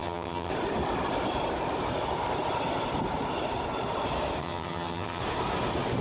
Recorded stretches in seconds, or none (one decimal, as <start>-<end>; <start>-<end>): 0.5-4.4; 5.2-6.0